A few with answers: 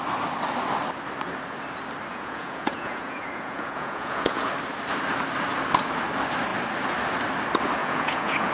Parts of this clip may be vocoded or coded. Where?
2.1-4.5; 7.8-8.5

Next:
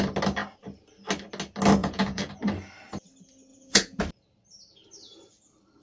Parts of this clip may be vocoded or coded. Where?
1.8-2.3; 3.5-4.0

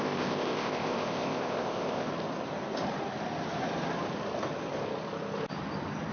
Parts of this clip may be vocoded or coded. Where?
0.0-2.1

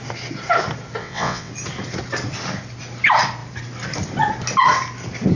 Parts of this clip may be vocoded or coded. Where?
1.0-1.5